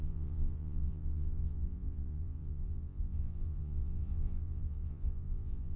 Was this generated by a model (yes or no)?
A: yes